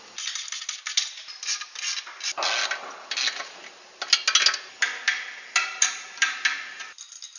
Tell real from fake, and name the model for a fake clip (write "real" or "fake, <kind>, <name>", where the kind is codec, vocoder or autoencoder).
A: real